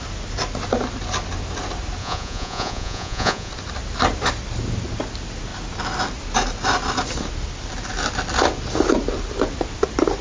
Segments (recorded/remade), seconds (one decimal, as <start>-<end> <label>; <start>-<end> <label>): 0.0-2.0 recorded; 2.0-3.5 remade; 3.5-10.2 recorded